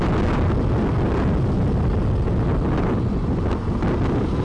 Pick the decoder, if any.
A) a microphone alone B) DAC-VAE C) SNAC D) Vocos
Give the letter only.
A